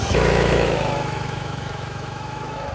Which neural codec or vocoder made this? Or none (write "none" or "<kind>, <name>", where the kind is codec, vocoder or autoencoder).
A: autoencoder, DAC-VAE